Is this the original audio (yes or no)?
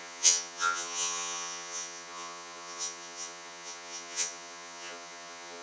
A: no